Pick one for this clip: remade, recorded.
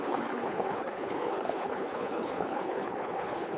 remade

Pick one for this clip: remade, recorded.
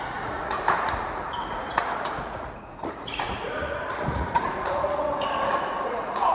remade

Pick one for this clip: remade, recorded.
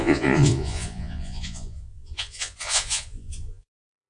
remade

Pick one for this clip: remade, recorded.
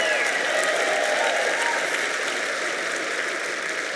recorded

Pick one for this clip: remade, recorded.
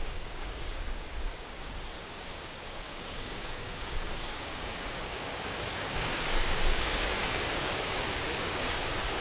remade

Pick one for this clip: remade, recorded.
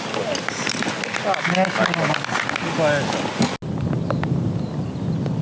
recorded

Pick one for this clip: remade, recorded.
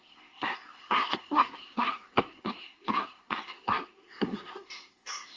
remade